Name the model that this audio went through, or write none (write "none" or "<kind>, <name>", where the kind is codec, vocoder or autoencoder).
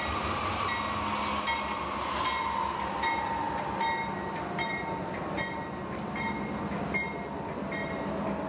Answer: none